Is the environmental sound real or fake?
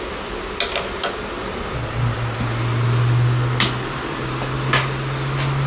real